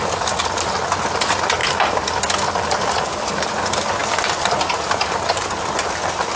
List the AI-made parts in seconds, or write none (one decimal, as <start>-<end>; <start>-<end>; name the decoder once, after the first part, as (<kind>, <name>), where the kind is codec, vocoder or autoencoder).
none